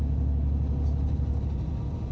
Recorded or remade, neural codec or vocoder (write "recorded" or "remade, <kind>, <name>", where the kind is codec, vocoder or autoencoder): recorded